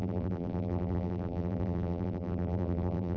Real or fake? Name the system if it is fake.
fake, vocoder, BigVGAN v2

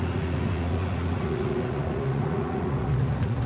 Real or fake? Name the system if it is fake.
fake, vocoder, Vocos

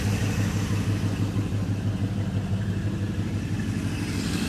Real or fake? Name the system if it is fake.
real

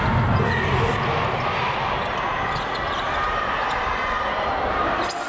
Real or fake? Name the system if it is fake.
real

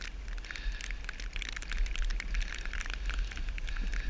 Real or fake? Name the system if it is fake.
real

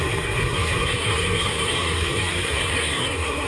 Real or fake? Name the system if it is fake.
fake, codec, SNAC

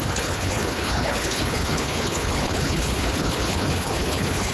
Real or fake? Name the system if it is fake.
fake, codec, HILCodec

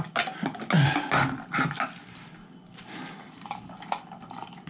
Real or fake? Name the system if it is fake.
real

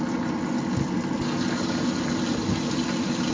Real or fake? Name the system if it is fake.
real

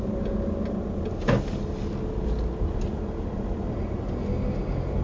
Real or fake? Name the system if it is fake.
real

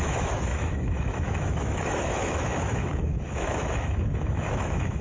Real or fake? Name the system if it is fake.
fake, autoencoder, DAC-VAE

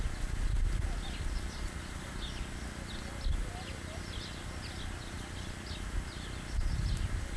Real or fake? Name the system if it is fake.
real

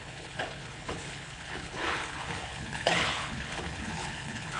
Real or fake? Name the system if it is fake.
fake, codec, HILCodec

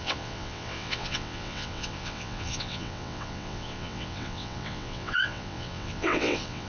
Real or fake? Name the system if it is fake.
fake, vocoder, WaveNeXt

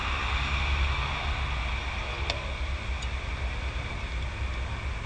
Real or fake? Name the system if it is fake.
real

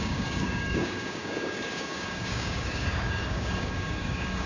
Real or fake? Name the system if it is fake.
fake, codec, DAC